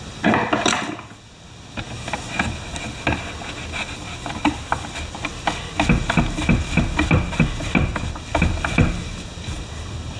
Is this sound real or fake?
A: real